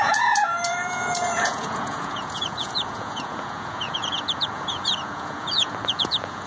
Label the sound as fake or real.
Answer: fake